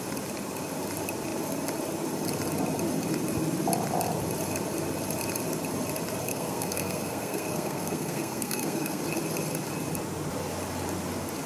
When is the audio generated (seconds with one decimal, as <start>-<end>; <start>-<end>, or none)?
6.3-9.0